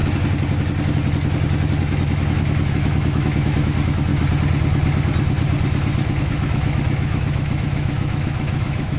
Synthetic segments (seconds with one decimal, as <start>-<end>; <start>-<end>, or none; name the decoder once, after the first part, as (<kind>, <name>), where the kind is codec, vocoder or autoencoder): 2.7-4.1 (autoencoder, DAC-VAE); 6.2-9.0